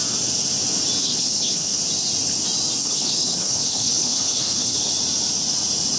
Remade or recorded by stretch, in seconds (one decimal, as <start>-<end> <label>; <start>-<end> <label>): 0.0-1.0 recorded; 1.0-1.8 remade; 1.8-2.8 recorded; 2.8-4.9 remade; 4.9-6.0 recorded